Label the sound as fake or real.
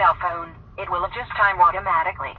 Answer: real